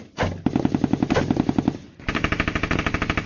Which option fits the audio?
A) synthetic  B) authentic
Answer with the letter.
B